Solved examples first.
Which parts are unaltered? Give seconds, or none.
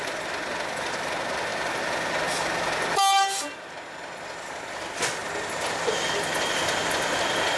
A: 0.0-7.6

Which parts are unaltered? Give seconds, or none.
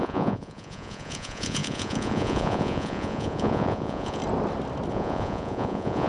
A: 4.2-4.9